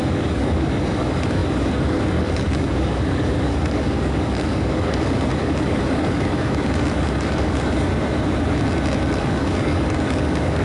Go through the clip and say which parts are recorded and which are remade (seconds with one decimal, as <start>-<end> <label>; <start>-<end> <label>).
0.0-7.9 remade; 7.9-9.1 recorded; 9.1-10.6 remade